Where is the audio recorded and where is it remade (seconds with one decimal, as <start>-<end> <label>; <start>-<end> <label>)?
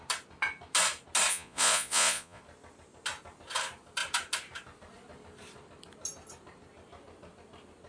0.0-1.3 recorded; 1.3-2.4 remade; 2.4-7.9 recorded